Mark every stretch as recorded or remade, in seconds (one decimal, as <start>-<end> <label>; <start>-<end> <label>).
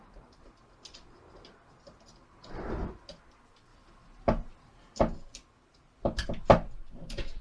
0.0-7.4 recorded